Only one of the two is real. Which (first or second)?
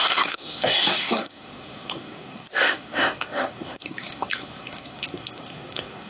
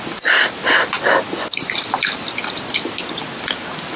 second